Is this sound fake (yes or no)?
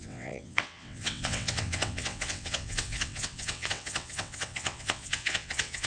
yes